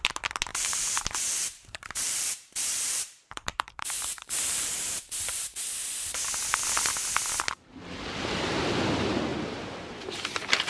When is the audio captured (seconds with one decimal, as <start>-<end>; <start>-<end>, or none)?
0.0-0.5; 5.6-9.3; 9.9-10.7